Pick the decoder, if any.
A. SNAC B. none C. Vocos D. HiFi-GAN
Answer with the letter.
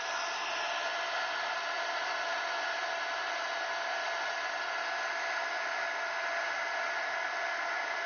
B